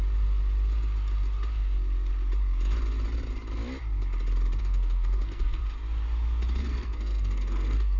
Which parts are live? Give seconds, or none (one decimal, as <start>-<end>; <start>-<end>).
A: 0.0-4.6; 5.6-6.6